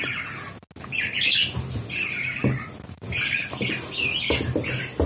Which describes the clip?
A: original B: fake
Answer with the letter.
A